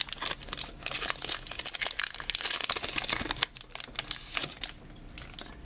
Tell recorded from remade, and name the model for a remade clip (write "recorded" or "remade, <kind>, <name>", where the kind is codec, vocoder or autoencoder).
recorded